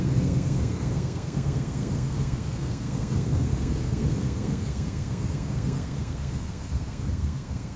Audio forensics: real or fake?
fake